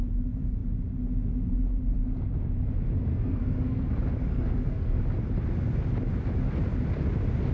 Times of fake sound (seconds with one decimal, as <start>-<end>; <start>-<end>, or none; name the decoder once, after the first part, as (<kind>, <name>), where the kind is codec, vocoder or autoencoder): 3.1-3.9 (codec, SNAC); 4.3-5.0